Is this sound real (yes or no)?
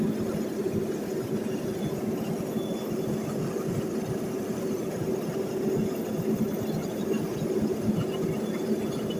yes